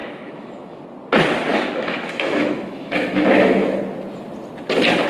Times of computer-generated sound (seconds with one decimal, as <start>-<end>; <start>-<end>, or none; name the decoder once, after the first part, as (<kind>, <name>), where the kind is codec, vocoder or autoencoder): 0.0-0.8 (autoencoder, DAC-VAE); 1.5-3.8